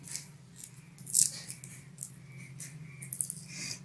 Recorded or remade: recorded